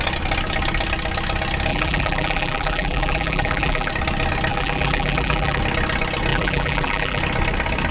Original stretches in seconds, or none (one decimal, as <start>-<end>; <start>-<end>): 0.0-1.7; 3.9-4.5; 5.6-6.3; 7.2-7.9